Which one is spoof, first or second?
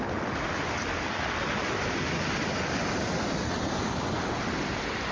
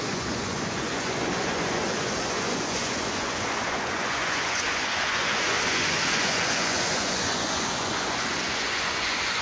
second